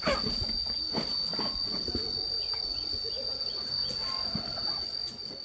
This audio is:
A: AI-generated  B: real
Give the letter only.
B